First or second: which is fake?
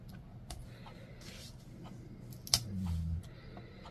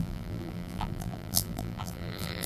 second